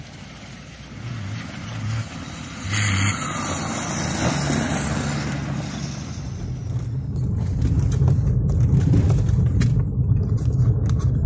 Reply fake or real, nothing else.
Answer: real